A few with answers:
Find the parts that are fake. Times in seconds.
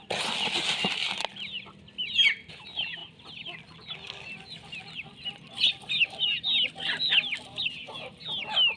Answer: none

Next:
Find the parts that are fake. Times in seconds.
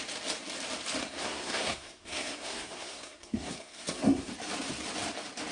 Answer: 1.0-4.3 (codec, SNAC)